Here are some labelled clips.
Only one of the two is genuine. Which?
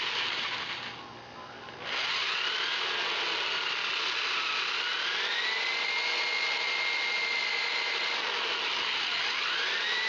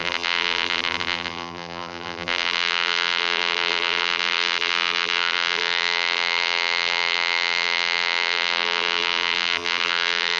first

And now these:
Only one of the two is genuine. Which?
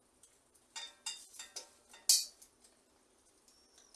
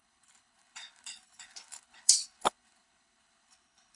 first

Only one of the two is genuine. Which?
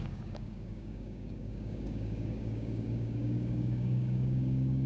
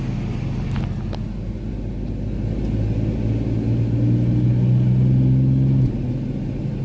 second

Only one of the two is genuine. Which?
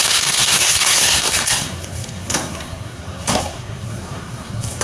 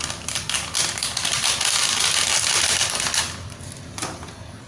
second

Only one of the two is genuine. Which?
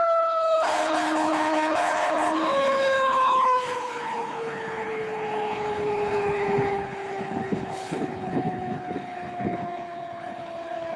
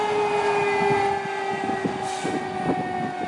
second